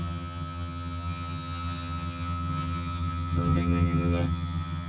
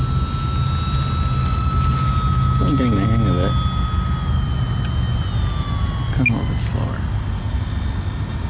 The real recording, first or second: second